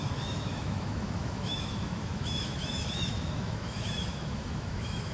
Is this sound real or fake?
fake